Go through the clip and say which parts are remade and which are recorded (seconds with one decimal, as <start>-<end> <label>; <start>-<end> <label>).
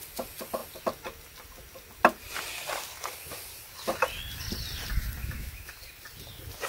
0.0-5.2 recorded; 5.2-5.7 remade; 5.7-6.7 recorded